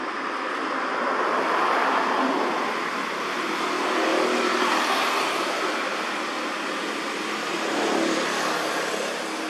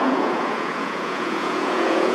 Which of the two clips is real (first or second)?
first